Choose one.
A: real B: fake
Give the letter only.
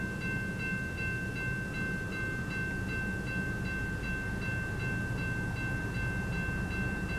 A